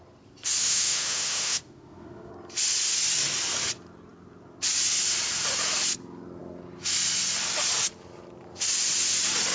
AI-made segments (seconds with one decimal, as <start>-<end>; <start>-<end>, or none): 0.6-2.3